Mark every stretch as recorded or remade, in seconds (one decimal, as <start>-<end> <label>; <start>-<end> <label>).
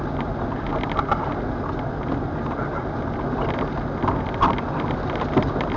0.0-5.8 recorded